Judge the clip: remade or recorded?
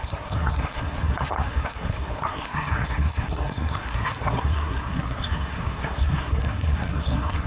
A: remade